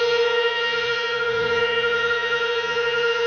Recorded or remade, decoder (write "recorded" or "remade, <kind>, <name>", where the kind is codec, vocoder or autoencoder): remade, vocoder, Vocos